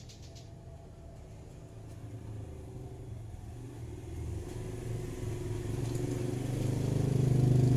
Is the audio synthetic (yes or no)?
no